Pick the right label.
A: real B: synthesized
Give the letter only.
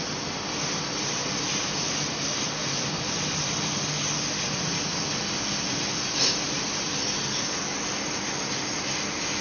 A